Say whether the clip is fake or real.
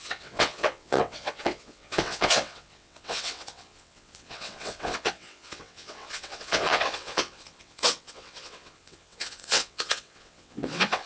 fake